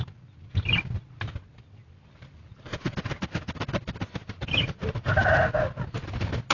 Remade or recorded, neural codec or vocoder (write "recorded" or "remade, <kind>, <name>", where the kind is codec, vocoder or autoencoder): recorded